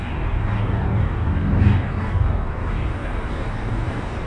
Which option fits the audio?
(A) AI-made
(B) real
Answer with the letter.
A